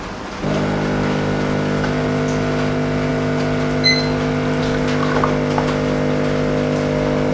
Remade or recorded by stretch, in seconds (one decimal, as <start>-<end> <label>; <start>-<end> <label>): 0.0-7.3 recorded

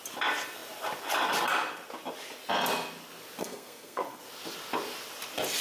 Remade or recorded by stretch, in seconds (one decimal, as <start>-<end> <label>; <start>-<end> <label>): 0.0-3.4 recorded; 3.4-4.2 remade; 4.2-5.6 recorded

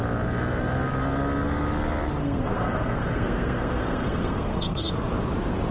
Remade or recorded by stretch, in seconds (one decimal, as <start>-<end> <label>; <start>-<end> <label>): 0.0-2.2 recorded; 2.2-4.9 remade; 4.9-5.7 recorded

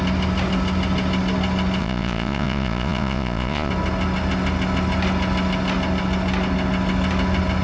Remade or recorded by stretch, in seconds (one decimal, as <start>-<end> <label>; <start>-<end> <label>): 0.0-1.8 recorded; 1.8-3.7 remade; 3.7-7.6 recorded

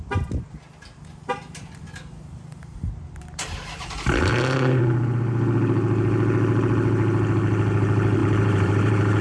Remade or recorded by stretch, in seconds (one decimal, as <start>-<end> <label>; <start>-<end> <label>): 0.0-4.3 recorded; 4.3-4.8 remade; 4.8-8.2 recorded; 8.2-9.2 remade

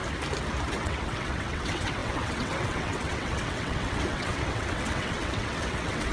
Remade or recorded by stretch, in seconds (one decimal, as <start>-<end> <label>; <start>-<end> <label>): 0.0-0.7 recorded; 0.7-6.1 remade

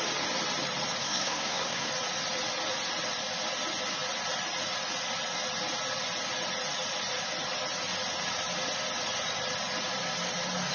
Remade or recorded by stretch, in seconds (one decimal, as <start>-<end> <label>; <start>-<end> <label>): 0.0-1.0 recorded; 1.0-1.9 remade; 1.9-10.7 recorded